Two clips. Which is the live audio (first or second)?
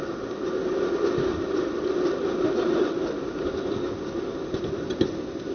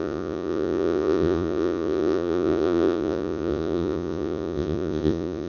first